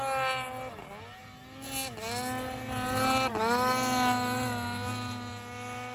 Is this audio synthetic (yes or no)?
no